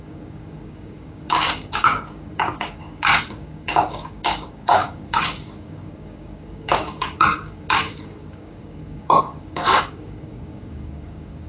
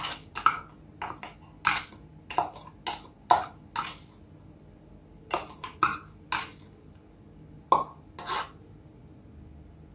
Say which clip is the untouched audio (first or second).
second